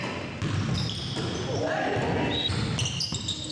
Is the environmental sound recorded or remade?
recorded